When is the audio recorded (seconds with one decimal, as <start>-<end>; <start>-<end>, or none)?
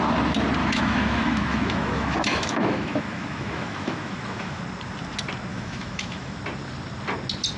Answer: 0.0-0.6; 4.6-5.5; 6.4-7.6